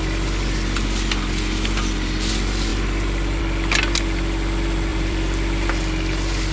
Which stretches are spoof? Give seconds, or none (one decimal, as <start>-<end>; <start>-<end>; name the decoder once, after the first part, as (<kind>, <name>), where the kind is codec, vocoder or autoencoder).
4.9-5.7 (vocoder, BigVGAN v2)